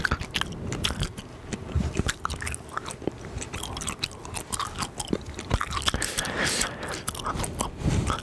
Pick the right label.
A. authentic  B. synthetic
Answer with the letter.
A